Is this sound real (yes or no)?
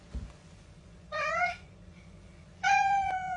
no